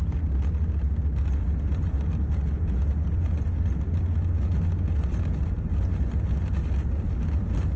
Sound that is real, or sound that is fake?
real